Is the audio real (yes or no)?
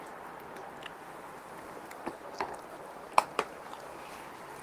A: yes